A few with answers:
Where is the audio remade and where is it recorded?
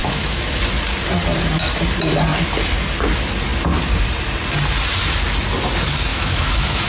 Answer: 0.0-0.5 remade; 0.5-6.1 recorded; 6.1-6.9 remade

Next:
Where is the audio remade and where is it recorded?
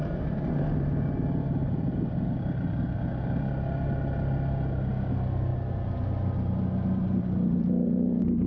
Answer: 0.0-8.5 recorded